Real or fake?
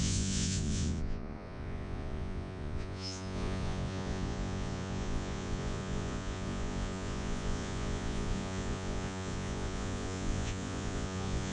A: fake